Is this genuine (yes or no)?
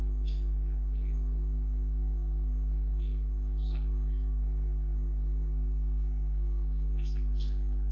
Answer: no